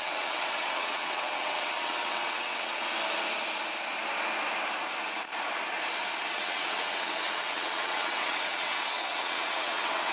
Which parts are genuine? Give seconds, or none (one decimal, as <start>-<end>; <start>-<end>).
2.7-6.3